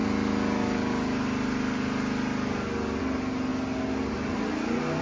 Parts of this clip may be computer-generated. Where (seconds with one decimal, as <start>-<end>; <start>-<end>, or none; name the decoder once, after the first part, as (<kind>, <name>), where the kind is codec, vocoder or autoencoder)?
none